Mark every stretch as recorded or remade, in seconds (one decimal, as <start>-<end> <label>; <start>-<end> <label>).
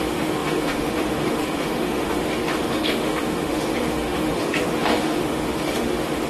0.0-6.3 remade